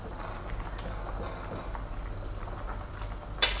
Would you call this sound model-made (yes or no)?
no